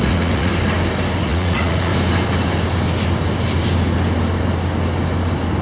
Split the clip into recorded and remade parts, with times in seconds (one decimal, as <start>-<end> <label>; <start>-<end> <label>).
0.0-0.5 remade; 0.5-1.2 recorded; 1.2-1.9 remade; 1.9-5.6 recorded